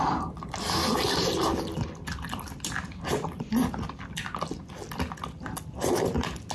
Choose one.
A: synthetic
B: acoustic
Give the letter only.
B